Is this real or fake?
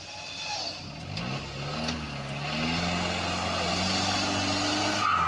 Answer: real